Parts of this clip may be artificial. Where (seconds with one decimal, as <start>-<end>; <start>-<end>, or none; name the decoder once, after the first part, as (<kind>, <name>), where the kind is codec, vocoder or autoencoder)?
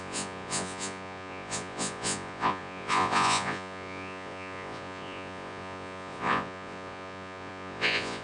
0.0-8.2 (vocoder, Vocos)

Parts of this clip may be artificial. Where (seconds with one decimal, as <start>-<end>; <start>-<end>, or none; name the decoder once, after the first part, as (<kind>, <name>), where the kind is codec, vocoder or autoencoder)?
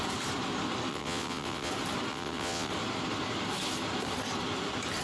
0.9-1.7 (vocoder, WaveNeXt); 2.1-2.7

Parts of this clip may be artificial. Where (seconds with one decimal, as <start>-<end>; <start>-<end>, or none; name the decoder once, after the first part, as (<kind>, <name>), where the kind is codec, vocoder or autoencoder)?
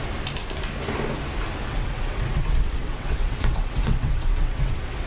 1.6-5.1 (vocoder, WaveNeXt)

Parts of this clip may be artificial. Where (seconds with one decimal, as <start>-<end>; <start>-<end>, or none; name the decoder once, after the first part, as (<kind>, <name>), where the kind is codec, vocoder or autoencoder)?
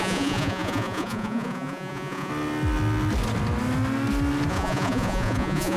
0.0-2.3 (vocoder, Vocos); 4.5-5.8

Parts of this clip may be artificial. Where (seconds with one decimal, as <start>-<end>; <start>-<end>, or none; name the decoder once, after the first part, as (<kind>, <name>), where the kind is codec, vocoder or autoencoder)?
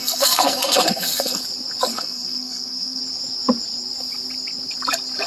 0.0-1.4 (codec, SNAC); 1.9-3.0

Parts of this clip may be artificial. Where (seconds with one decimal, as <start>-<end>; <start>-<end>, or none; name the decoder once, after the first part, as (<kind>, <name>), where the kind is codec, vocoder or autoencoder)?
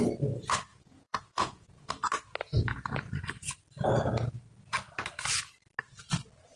0.7-1.9 (vocoder, Vocos)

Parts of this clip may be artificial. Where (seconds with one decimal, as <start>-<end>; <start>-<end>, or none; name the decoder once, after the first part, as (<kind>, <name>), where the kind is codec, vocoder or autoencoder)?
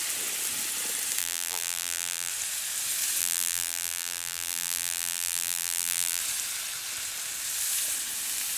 1.2-2.3 (vocoder, BigVGAN v2); 3.2-6.2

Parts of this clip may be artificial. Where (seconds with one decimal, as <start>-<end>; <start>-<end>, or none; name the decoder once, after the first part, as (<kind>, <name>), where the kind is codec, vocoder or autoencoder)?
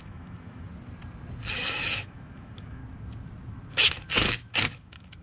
0.0-0.7 (autoencoder, DAC-VAE); 1.5-2.8; 3.7-5.2